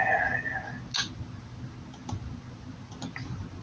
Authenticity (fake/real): real